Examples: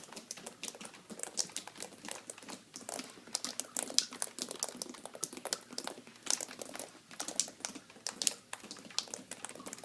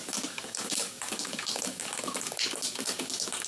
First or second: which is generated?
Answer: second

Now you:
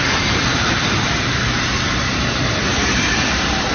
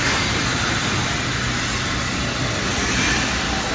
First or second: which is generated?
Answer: first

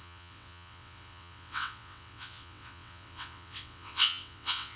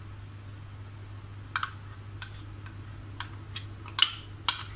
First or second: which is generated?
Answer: first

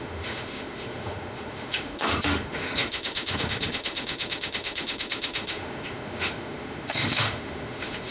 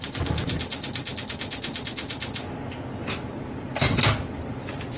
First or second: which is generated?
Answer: first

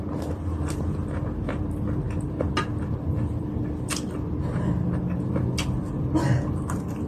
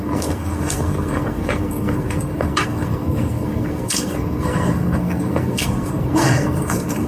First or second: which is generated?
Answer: second